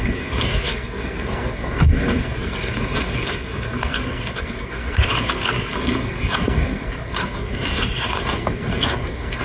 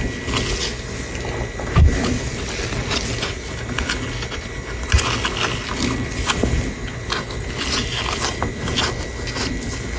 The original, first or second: second